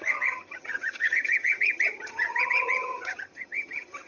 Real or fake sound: fake